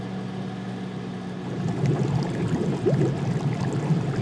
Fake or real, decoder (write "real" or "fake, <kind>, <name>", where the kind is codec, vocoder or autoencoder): real